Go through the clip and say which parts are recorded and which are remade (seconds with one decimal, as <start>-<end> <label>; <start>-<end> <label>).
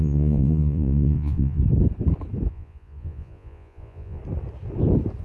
0.0-1.6 remade; 1.6-2.5 recorded; 2.5-4.2 remade; 4.2-5.2 recorded